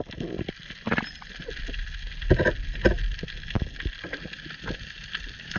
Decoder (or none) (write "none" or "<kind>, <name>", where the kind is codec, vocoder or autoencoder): none